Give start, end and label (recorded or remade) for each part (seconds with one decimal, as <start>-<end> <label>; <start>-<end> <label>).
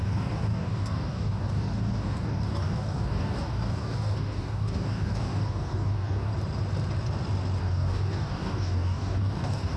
0.0-6.3 remade; 6.3-7.6 recorded; 7.6-9.8 remade